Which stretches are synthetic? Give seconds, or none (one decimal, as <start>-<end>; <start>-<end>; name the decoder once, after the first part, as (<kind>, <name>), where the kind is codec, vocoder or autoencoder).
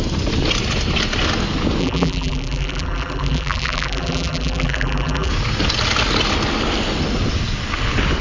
1.8-5.3 (vocoder, BigVGAN v2)